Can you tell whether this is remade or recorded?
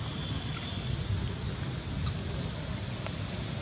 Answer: recorded